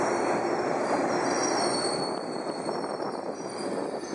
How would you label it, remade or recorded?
recorded